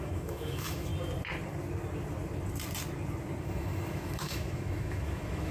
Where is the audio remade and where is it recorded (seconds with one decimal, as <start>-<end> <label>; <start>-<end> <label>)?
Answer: 0.0-0.9 remade; 0.9-3.4 recorded; 3.4-5.5 remade